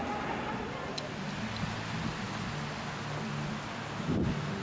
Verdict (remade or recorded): recorded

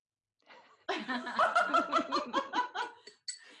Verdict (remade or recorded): recorded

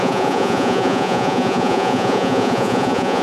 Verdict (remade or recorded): remade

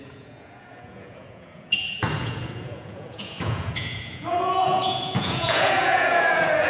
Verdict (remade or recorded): remade